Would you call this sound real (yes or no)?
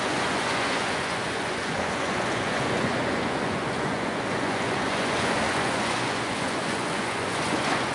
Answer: no